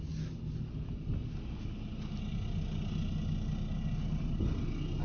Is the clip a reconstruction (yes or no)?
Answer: no